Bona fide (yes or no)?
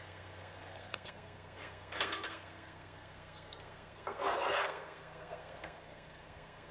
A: no